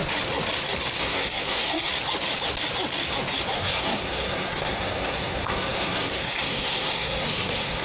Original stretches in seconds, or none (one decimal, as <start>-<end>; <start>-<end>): 0.0-1.0; 1.9-3.5